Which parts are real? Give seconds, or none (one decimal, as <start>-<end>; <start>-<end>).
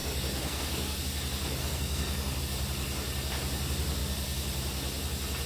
1.0-1.6; 2.4-5.5